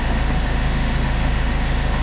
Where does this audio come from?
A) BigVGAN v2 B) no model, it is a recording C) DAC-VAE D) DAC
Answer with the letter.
C